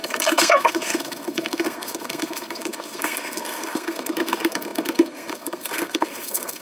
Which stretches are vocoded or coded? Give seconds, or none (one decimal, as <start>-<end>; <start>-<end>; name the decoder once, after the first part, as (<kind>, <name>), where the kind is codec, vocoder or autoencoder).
0.0-6.6 (codec, SNAC)